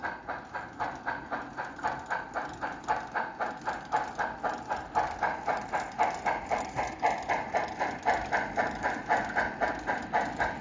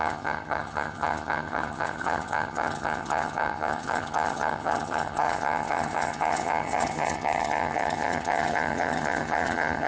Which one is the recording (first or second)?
first